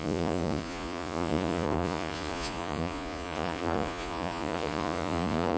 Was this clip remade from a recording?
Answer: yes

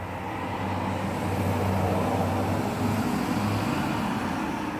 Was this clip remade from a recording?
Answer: no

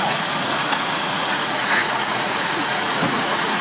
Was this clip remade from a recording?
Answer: yes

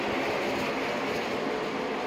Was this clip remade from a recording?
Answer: no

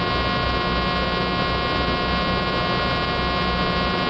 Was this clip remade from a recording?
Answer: no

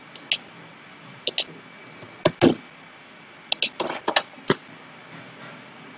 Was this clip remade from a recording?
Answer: no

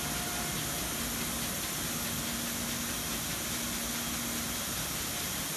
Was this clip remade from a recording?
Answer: no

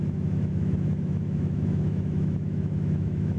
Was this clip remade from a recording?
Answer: yes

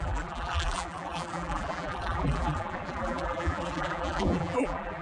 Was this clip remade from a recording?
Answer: yes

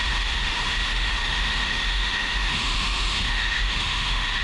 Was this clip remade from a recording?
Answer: yes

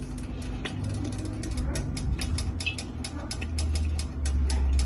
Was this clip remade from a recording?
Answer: no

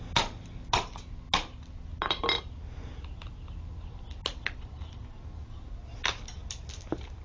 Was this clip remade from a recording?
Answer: no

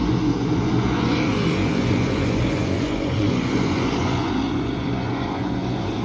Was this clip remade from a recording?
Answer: yes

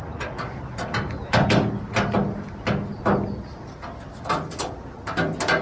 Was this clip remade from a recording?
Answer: no